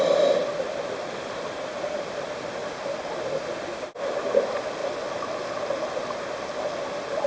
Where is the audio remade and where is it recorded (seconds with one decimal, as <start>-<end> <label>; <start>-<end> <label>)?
0.0-7.3 recorded